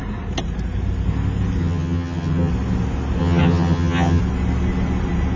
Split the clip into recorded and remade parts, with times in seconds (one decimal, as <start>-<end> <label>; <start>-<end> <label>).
0.0-1.6 recorded; 1.6-2.5 remade; 2.5-3.2 recorded; 3.2-4.2 remade; 4.2-5.4 recorded